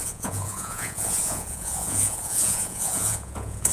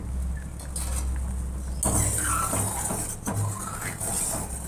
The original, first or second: second